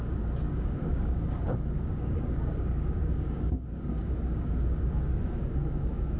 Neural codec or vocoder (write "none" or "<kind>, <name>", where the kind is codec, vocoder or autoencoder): codec, DAC